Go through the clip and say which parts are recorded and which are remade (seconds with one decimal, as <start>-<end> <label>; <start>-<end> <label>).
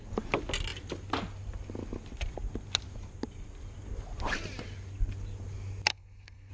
0.0-5.9 recorded; 5.9-6.5 remade